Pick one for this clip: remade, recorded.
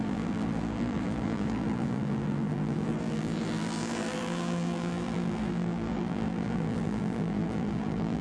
remade